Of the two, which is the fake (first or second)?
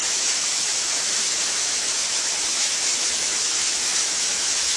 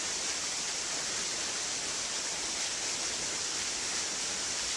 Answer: first